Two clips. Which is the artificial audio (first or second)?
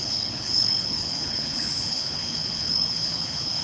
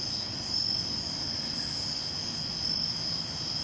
first